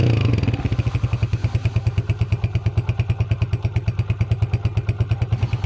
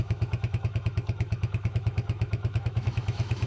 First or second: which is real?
first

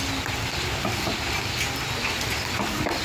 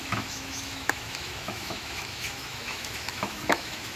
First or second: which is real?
first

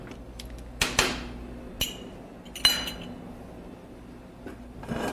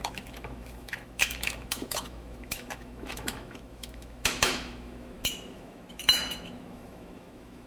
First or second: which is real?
first